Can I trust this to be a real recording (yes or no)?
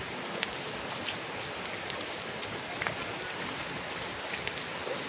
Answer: yes